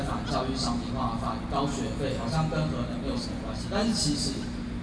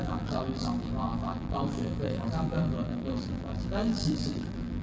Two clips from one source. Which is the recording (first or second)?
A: first